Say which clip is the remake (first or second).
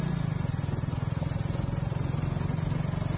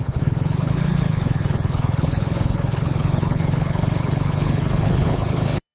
second